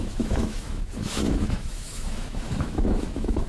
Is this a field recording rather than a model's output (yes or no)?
no